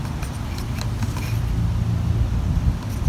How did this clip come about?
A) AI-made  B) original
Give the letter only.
B